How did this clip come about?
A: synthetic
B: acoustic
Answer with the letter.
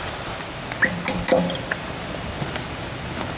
B